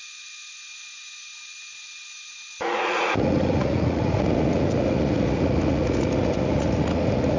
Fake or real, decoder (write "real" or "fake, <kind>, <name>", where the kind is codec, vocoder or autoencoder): fake, vocoder, Vocos